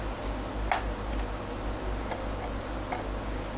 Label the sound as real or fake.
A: real